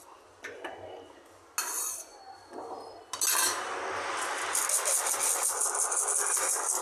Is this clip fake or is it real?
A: real